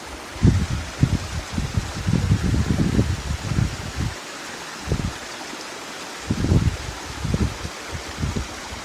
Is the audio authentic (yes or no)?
yes